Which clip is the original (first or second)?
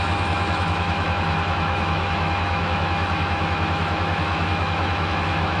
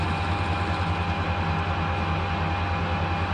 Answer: second